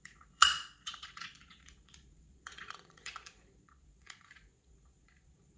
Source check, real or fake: fake